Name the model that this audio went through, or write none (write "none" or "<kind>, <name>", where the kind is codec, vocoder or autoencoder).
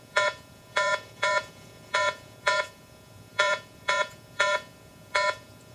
vocoder, Vocos